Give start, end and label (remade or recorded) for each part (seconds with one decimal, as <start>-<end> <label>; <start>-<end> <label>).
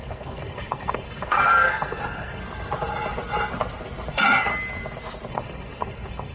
0.0-2.4 remade; 2.4-4.1 recorded; 4.1-4.5 remade; 4.5-5.3 recorded; 5.3-6.3 remade